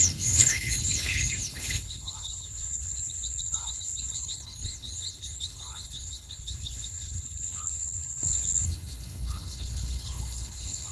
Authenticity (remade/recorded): remade